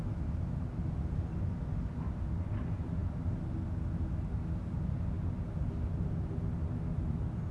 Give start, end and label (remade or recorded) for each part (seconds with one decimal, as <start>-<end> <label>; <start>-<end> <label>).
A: 0.0-7.5 recorded